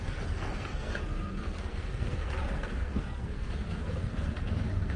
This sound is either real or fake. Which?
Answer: fake